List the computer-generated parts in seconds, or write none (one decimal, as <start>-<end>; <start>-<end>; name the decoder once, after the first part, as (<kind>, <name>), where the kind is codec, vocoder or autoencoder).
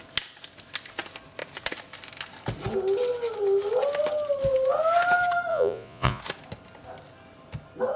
5.5-6.2 (vocoder, Vocos)